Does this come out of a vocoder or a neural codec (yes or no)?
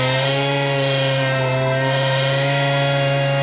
yes